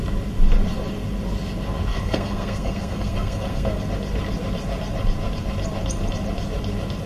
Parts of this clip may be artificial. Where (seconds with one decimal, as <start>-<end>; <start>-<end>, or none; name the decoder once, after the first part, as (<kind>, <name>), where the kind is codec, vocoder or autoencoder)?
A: 1.9-3.8 (codec, SNAC)